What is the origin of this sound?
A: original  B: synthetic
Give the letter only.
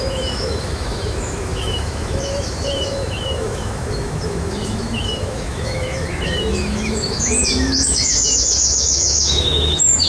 B